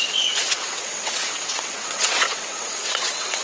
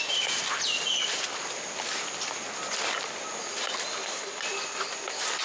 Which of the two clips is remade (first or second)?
first